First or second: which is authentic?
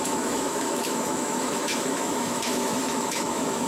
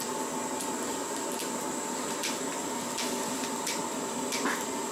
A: second